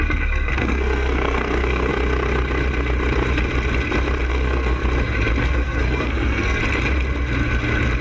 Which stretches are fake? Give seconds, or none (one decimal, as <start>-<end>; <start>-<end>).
0.0-1.9; 4.3-4.8; 5.4-6.6